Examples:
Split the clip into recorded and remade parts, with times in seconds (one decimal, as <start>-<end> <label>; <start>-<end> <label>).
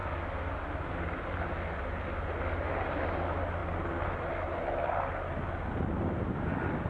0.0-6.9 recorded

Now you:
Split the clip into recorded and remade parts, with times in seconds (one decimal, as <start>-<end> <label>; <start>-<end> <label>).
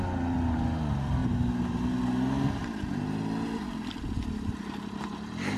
0.0-5.6 recorded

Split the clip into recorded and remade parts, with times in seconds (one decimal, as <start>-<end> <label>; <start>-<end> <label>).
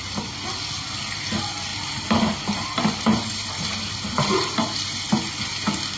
0.0-1.7 recorded; 1.7-5.3 remade; 5.3-6.0 recorded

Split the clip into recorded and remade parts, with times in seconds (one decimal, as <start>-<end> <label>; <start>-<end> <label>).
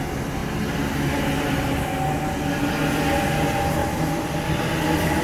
0.0-3.8 recorded; 3.8-5.2 remade